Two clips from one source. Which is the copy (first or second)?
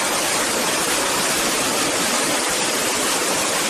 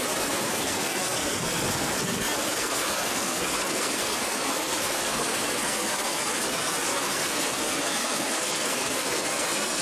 second